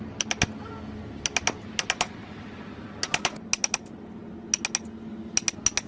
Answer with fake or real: real